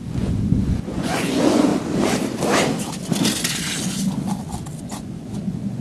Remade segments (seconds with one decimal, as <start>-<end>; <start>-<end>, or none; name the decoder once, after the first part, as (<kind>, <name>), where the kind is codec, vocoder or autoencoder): 0.0-1.7 (vocoder, Vocos); 4.8-5.8

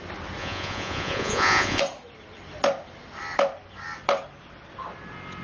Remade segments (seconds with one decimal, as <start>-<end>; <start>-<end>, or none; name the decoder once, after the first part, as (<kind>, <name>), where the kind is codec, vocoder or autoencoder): 0.4-1.8 (vocoder, Vocos)

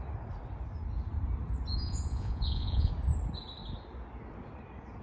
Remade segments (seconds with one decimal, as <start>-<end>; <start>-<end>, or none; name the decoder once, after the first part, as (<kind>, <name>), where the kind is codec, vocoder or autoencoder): 1.7-2.9 (vocoder, Vocos)